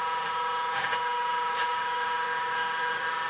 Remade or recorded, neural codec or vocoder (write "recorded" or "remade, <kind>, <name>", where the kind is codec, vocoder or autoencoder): remade, autoencoder, DAC-VAE